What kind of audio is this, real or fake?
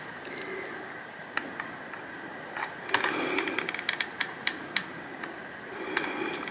real